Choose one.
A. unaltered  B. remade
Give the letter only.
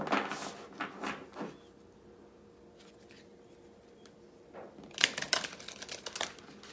A